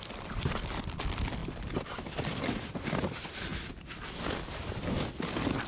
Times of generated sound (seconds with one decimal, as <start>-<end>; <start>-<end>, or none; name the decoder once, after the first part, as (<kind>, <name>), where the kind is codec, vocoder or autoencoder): none